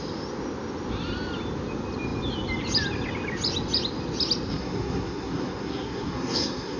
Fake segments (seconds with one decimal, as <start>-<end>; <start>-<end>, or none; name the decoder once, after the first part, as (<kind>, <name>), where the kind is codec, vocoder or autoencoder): 4.5-6.8 (codec, SNAC)